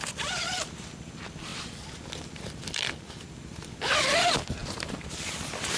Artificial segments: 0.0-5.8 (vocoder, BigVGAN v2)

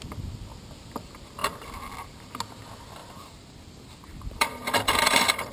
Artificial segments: 3.0-5.5 (vocoder, BigVGAN v2)

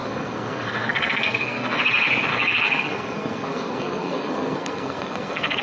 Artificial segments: 0.0-1.8 (codec, SNAC); 2.3-5.6

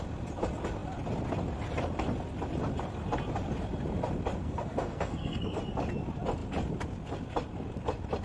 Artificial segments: 4.4-5.6 (codec, SNAC)